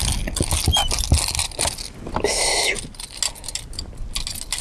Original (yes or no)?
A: yes